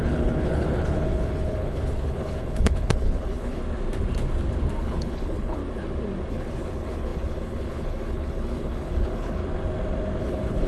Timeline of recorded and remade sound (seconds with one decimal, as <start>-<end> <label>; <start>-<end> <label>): 0.0-3.6 remade; 3.6-4.8 recorded; 4.8-5.6 remade; 5.6-6.3 recorded; 6.3-9.4 remade; 9.4-10.2 recorded; 10.2-10.7 remade